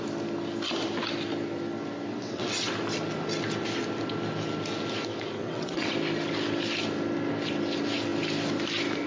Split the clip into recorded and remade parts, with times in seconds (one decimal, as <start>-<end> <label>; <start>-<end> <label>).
0.0-2.1 recorded; 2.1-2.7 remade; 2.7-5.4 recorded; 5.4-5.9 remade; 5.9-9.1 recorded